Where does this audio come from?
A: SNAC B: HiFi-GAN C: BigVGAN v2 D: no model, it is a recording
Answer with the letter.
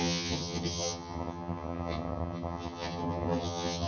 B